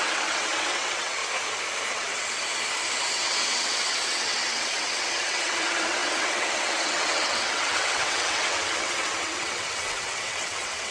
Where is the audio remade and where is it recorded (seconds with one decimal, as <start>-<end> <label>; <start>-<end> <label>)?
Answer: 0.0-1.2 remade; 1.2-1.9 recorded; 1.9-2.5 remade; 2.5-3.1 recorded; 3.1-10.9 remade